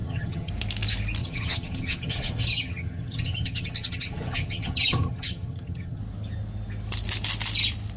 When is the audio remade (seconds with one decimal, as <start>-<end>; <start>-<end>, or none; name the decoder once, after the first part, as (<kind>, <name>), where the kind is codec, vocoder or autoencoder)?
0.0-0.5 (vocoder, HiFi-GAN); 1.2-6.0